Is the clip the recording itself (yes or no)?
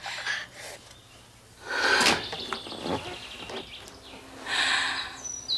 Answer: yes